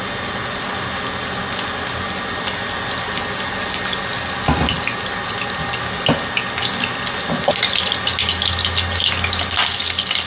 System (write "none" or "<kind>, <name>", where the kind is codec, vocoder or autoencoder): none